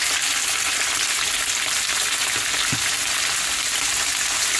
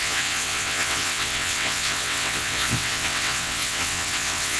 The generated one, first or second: second